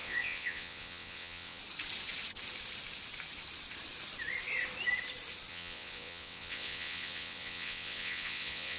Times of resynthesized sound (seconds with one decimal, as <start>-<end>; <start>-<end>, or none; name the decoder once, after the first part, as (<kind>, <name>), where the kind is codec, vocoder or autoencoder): 0.0-1.6 (vocoder, WaveNeXt); 5.5-8.8